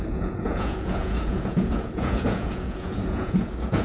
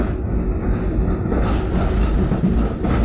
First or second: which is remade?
first